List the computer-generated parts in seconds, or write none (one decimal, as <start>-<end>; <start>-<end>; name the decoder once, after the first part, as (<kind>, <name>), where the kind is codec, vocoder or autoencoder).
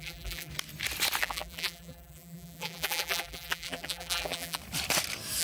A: 0.0-0.5 (vocoder, BigVGAN v2); 1.2-4.6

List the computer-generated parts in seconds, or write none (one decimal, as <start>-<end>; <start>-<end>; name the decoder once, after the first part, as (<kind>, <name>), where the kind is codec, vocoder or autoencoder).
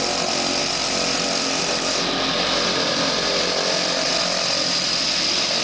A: none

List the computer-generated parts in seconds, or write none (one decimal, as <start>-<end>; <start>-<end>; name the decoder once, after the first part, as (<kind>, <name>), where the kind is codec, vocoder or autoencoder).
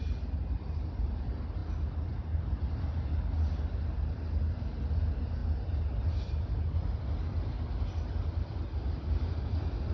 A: none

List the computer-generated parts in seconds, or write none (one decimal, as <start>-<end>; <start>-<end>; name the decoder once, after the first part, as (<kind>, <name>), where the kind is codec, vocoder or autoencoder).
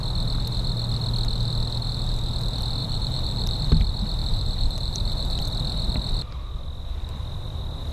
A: 2.8-3.6 (vocoder, BigVGAN v2); 4.2-5.4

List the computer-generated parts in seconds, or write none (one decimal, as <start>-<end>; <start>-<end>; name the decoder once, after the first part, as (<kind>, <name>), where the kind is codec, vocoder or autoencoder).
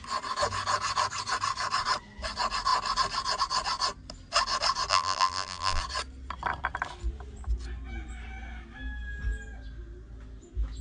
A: 4.9-5.8 (vocoder, BigVGAN v2)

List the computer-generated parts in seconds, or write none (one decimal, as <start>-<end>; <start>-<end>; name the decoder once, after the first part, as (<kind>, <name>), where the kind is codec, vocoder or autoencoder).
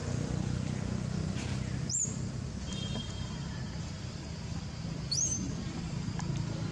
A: 0.0-6.7 (vocoder, BigVGAN v2)